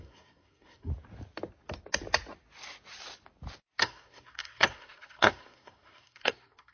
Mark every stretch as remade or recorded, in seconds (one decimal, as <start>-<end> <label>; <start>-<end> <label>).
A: 0.0-0.9 remade; 0.9-3.8 recorded; 3.8-6.7 remade